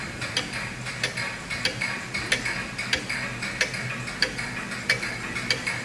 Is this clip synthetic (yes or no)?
no